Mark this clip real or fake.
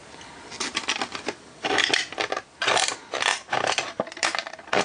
real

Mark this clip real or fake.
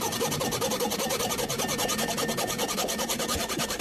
fake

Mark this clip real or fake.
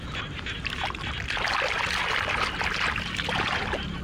real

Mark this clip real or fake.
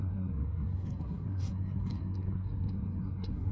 fake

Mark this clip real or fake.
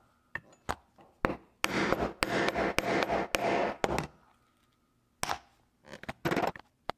real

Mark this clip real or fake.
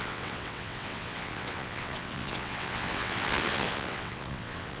fake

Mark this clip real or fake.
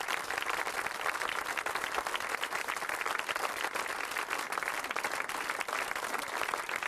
real